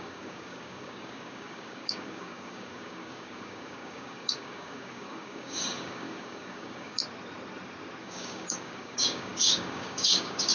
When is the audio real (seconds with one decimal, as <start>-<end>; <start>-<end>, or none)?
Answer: 7.0-8.0